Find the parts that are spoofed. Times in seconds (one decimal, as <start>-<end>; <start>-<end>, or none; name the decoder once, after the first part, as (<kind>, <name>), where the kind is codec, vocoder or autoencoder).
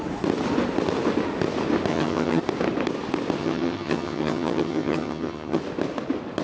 1.9-2.4 (vocoder, HiFi-GAN); 3.4-5.6